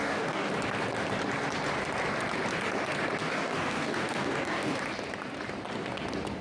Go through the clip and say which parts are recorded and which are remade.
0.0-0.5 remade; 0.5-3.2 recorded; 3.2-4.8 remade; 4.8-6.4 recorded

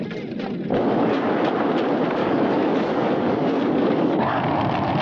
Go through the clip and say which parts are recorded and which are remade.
0.0-0.7 recorded; 0.7-1.3 remade; 1.3-2.2 recorded; 2.2-4.5 remade; 4.5-5.0 recorded

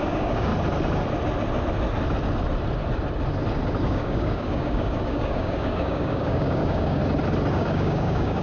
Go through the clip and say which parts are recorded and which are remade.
0.0-0.5 remade; 0.5-3.8 recorded; 3.8-7.0 remade; 7.0-7.5 recorded; 7.5-8.4 remade

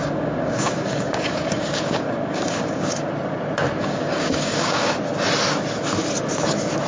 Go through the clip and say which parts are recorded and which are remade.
0.0-3.1 remade; 3.1-3.8 recorded; 3.8-4.9 remade; 4.9-6.9 recorded

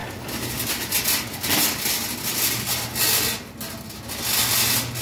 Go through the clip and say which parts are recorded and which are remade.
0.0-5.0 recorded

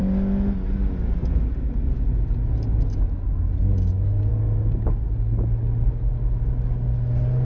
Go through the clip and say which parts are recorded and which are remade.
0.0-7.4 recorded

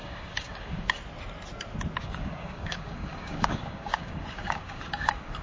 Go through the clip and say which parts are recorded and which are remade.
0.0-1.0 remade; 1.0-2.0 recorded; 2.0-5.4 remade

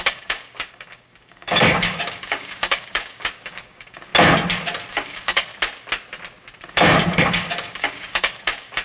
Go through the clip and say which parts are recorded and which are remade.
0.0-4.1 remade; 4.1-4.9 recorded; 4.9-5.5 remade; 5.5-6.7 recorded; 6.7-8.8 remade